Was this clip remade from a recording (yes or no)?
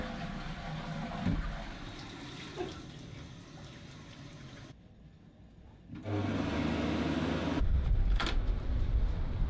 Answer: no